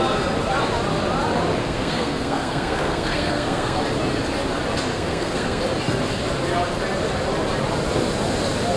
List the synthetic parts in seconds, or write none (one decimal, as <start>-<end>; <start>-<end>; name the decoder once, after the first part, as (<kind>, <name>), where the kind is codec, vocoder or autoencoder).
1.6-3.8 (codec, SNAC); 4.9-5.6

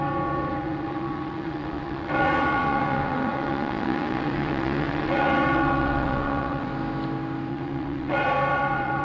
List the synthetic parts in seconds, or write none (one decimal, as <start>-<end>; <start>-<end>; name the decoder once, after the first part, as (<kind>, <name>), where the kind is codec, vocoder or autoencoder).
0.0-6.7 (vocoder, WaveNeXt); 7.5-9.0

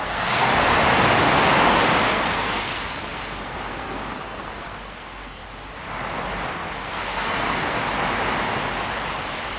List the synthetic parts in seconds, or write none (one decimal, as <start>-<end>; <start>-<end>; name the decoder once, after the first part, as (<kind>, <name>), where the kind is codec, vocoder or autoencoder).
0.0-0.5 (codec, SNAC); 2.1-5.4; 6.5-7.8

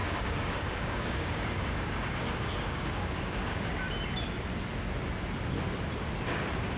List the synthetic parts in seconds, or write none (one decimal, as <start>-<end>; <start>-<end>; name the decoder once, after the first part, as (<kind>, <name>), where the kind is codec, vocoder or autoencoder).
0.0-3.7 (codec, DAC)

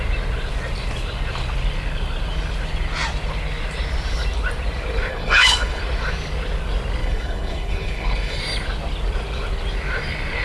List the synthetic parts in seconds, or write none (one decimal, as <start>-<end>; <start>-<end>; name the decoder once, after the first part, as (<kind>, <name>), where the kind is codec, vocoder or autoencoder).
5.1-5.8 (codec, HILCodec); 7.0-8.4

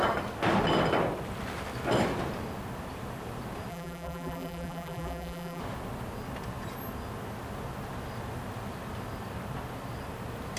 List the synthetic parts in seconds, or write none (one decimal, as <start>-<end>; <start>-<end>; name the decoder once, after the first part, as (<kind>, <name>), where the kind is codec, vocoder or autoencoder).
3.7-5.6 (vocoder, BigVGAN v2)